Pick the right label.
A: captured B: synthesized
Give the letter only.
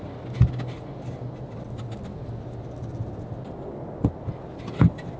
A